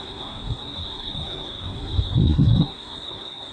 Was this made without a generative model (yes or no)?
no